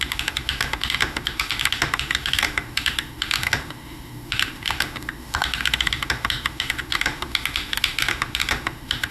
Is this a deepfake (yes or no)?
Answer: yes